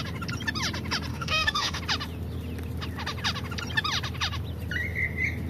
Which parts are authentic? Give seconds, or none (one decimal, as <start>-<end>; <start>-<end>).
0.0-1.1; 1.8-5.5